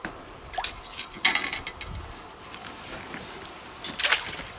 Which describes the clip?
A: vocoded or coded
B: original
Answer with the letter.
B